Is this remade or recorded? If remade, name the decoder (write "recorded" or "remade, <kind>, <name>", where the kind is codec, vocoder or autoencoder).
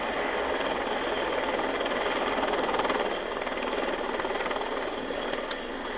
recorded